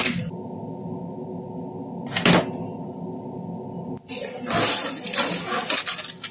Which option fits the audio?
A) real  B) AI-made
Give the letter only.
A